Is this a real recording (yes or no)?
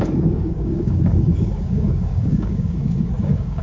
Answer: no